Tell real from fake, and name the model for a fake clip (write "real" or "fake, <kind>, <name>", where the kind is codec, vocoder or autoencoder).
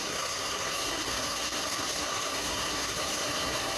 fake, codec, SNAC